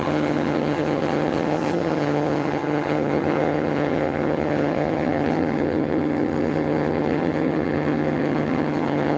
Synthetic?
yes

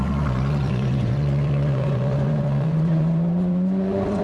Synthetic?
yes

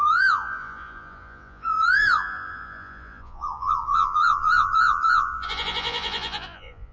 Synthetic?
yes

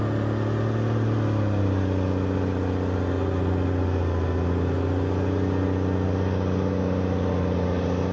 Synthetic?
no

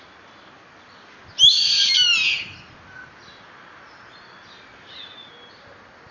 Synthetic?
no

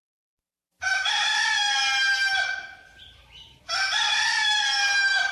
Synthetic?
no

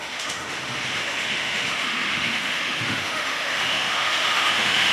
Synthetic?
yes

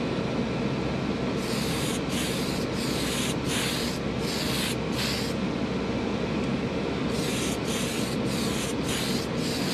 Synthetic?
no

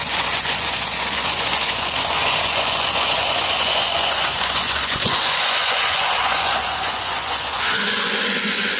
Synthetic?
yes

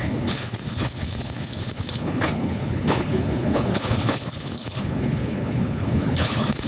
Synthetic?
yes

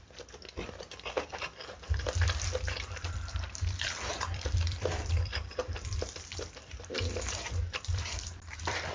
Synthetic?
yes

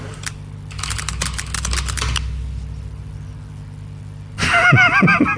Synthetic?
no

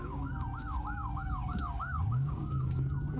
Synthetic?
yes